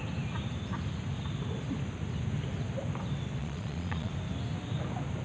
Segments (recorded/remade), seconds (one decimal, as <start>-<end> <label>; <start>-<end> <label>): 0.0-3.4 recorded; 3.4-4.1 remade; 4.1-5.2 recorded